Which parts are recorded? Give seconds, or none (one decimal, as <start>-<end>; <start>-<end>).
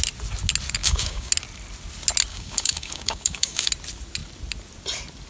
0.0-0.8; 1.3-2.3; 3.7-5.3